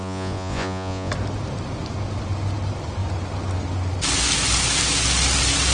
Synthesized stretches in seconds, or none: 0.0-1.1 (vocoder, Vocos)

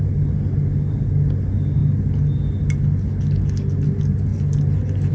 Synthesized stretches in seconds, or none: none

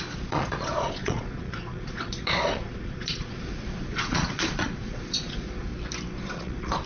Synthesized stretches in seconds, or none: 0.0-5.7 (vocoder, Vocos); 6.2-6.9

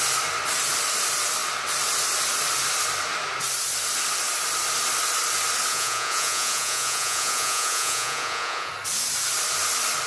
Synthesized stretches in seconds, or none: 5.7-8.7 (vocoder, Vocos)

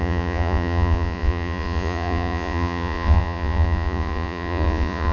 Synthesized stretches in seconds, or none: 0.0-5.1 (vocoder, Vocos)

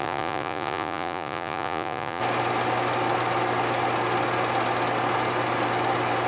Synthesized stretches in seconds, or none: 0.0-2.2 (vocoder, Vocos)